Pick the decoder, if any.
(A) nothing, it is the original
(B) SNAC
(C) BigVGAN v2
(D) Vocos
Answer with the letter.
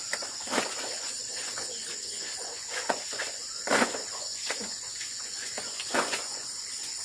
D